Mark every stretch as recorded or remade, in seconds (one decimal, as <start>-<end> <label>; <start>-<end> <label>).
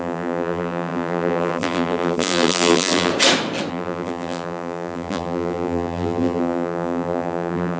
0.0-3.1 remade; 3.1-3.7 recorded; 3.7-7.8 remade